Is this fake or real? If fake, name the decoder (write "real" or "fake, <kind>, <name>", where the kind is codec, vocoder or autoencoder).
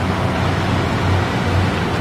real